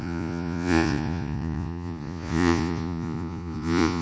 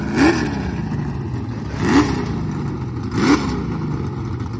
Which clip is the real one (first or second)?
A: second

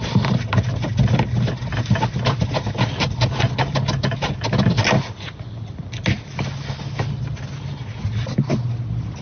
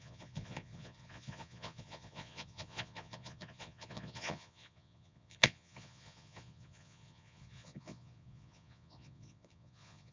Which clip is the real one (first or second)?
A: first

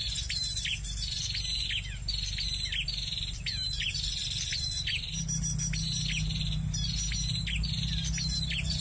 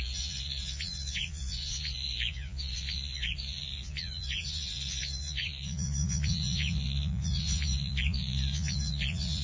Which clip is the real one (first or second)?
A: first